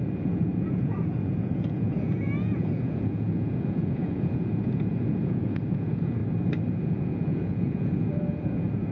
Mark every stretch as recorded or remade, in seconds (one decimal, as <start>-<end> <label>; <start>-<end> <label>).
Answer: 0.0-6.2 remade; 6.2-6.7 recorded; 6.7-8.9 remade